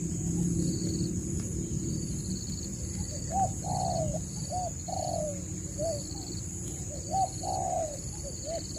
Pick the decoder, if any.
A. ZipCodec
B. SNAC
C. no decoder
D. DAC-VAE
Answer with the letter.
C